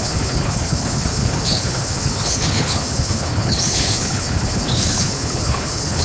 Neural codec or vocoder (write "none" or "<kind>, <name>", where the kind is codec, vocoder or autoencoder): codec, HILCodec